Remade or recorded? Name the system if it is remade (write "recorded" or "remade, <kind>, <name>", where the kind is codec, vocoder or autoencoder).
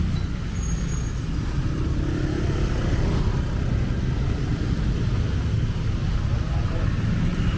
recorded